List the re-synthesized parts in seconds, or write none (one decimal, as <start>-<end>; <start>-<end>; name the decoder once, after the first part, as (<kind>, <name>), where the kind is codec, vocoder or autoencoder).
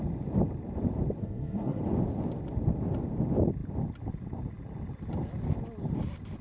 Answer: 1.2-1.8 (codec, SNAC)